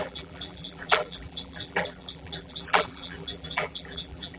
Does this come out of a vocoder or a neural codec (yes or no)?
yes